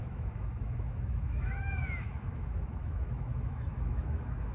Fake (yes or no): yes